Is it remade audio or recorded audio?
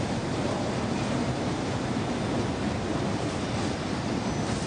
recorded